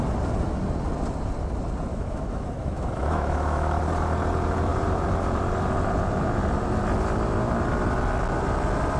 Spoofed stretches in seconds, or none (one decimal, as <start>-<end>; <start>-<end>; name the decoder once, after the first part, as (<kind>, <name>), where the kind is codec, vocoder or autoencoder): 1.9-3.8 (autoencoder, DAC-VAE)